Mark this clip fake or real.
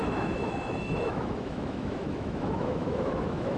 fake